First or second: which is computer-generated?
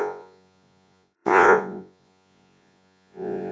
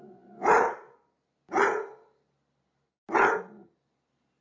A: first